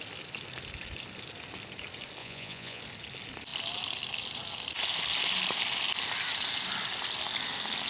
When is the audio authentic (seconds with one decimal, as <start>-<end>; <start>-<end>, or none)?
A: 0.0-2.2; 2.8-7.9